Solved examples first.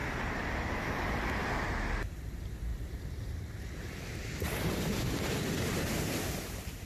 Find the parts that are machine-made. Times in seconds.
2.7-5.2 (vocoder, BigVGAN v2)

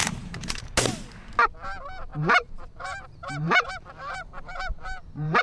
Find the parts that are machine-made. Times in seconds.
0.0-0.5 (vocoder, BigVGAN v2); 2.1-5.4